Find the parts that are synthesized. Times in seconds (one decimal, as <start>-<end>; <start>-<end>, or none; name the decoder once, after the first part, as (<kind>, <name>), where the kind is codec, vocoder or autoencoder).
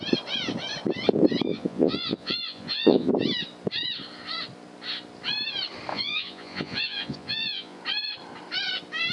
1.5-3.1 (vocoder, Vocos); 5.9-7.8